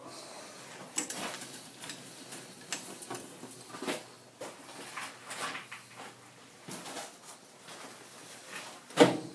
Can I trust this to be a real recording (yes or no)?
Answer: yes